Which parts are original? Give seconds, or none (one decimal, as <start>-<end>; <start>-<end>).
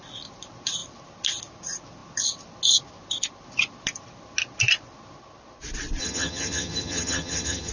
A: 0.0-6.0